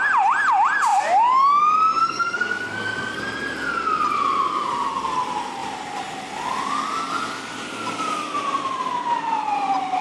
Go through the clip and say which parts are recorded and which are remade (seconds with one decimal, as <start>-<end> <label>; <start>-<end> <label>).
0.0-2.0 recorded; 2.0-3.2 remade; 3.2-10.0 recorded